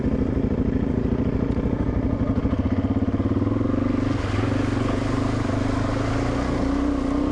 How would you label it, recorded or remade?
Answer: recorded